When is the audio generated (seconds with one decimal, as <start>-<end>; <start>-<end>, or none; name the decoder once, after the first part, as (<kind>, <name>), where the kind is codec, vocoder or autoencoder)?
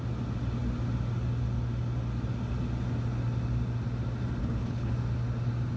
4.4-4.9 (codec, HILCodec)